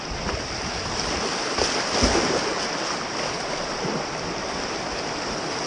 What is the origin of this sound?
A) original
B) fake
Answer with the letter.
A